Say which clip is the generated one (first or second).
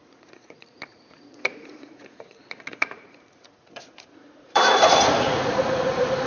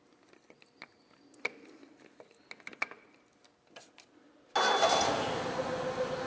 first